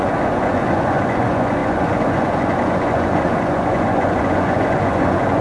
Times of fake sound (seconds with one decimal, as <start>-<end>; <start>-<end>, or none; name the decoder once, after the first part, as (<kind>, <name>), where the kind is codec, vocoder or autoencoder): 0.0-5.4 (vocoder, Vocos)